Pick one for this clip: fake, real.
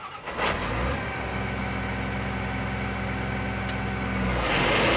real